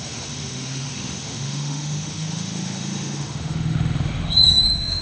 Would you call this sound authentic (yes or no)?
no